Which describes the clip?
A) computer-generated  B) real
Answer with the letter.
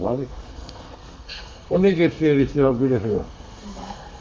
A